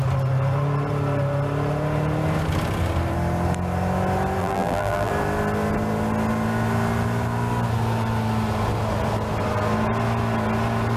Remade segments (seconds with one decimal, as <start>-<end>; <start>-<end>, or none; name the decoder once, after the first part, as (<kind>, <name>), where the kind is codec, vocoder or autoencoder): 4.4-5.1 (vocoder, BigVGAN v2)